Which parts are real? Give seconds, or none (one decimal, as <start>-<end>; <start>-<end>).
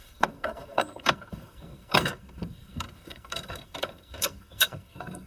none